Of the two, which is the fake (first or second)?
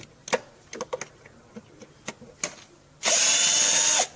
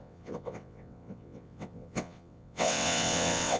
second